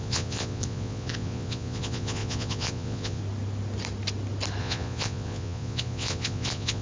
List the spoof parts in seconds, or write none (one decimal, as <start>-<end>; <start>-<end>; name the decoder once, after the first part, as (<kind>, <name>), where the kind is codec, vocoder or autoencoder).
0.0-3.2 (vocoder, Vocos); 4.6-6.8